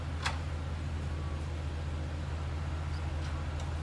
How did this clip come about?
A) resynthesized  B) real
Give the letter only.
B